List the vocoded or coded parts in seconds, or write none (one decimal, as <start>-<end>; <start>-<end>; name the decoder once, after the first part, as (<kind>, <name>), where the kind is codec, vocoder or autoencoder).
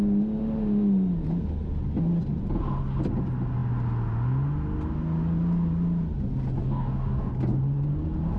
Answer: 6.6-7.3 (codec, DAC)